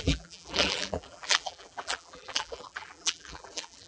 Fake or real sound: fake